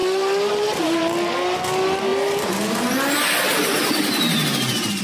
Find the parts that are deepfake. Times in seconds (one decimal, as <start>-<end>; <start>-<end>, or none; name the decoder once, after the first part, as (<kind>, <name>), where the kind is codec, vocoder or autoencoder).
none